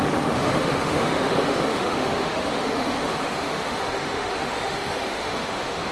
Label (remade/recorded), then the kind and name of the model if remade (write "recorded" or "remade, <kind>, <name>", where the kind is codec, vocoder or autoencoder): remade, autoencoder, DAC-VAE